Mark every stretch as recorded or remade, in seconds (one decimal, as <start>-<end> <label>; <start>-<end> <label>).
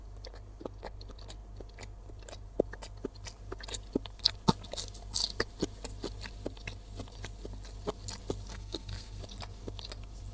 0.0-8.5 recorded; 8.5-9.2 remade; 9.2-10.3 recorded